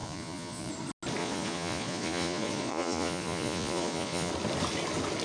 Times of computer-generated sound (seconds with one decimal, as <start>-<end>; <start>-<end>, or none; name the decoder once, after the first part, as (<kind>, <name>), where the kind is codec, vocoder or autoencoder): 0.0-0.7 (vocoder, Vocos); 1.2-4.3

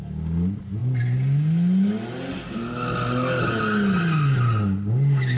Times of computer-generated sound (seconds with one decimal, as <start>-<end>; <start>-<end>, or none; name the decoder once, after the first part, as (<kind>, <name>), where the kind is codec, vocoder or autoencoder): none

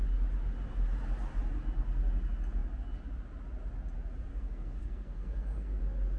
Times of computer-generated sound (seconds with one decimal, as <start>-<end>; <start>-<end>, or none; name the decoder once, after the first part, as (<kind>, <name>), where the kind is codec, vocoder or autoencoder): 4.3-5.8 (codec, SNAC)

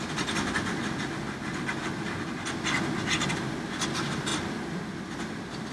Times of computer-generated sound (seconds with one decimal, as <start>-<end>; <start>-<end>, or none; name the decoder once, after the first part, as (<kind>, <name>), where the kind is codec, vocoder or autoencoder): none

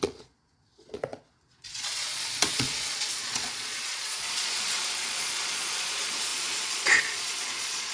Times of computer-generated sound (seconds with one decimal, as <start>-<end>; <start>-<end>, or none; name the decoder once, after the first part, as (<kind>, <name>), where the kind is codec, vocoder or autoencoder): 0.0-7.9 (vocoder, Vocos)

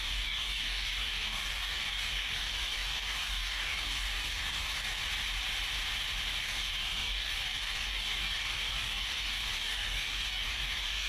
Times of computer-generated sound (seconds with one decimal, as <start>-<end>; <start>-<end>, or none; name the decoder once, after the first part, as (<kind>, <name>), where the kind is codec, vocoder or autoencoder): 0.0-5.0 (codec, DAC); 6.4-11.1

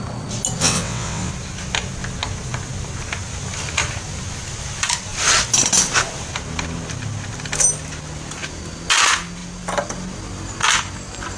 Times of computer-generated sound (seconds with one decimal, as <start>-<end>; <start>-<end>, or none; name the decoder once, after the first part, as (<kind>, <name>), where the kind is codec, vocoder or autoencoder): 0.6-1.3 (vocoder, WaveNeXt)